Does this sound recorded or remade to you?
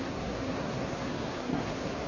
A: remade